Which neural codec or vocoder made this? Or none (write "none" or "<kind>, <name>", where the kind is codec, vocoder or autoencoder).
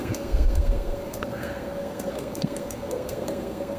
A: codec, SNAC